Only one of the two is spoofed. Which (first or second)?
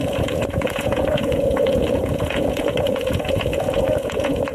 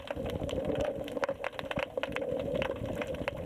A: first